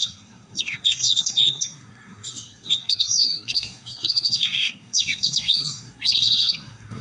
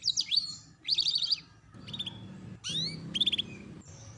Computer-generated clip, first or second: first